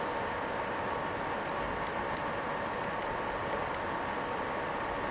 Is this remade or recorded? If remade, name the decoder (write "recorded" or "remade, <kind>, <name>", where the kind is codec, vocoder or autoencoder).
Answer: recorded